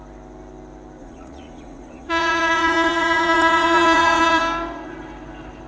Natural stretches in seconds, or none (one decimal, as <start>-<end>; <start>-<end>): 0.0-1.0; 4.4-5.7